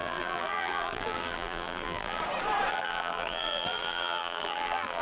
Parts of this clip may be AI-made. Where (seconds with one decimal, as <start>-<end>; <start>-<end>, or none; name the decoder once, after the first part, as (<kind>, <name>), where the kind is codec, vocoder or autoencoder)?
0.0-2.2 (vocoder, BigVGAN v2); 2.7-5.0